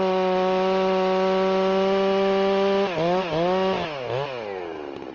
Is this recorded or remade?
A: recorded